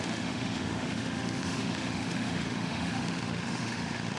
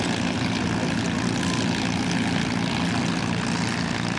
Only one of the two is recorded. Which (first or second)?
second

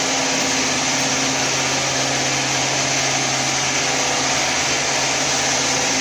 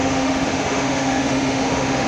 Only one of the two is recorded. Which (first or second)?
first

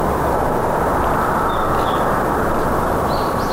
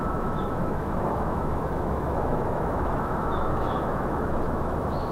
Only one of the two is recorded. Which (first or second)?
first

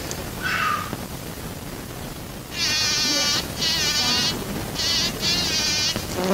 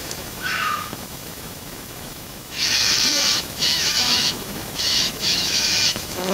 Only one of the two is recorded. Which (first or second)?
first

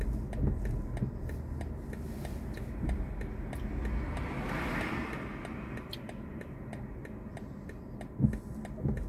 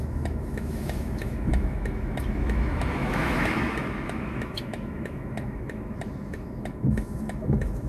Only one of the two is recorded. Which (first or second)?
first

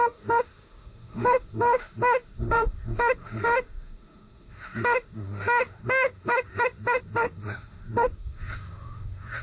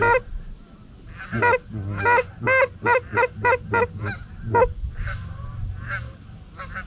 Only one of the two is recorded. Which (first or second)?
second